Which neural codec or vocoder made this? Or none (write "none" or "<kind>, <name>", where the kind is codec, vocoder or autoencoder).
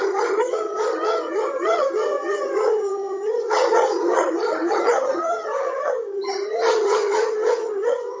vocoder, HiFi-GAN